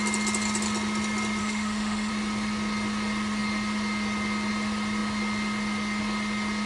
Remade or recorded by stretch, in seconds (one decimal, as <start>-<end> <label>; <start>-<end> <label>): 0.0-1.4 recorded; 1.4-2.1 remade; 2.1-6.7 recorded